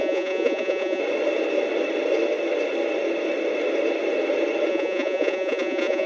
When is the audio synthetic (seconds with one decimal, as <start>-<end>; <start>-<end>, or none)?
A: 0.0-1.0; 4.7-6.1